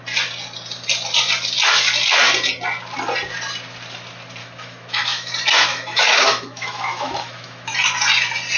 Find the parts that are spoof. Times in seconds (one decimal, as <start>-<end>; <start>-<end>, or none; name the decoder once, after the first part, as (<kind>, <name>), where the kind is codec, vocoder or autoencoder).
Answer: 4.4-5.3 (autoencoder, DAC-VAE); 5.7-7.7

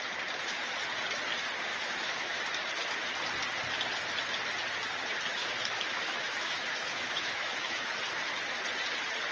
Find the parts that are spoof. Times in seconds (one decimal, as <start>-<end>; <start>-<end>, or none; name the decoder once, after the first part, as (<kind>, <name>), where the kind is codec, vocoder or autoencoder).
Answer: 1.7-2.4 (autoencoder, DAC-VAE); 5.3-7.9

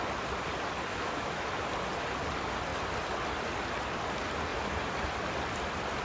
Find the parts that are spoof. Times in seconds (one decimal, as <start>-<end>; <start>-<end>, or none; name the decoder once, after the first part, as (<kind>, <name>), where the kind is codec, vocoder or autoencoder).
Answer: 0.9-1.5 (autoencoder, DAC-VAE)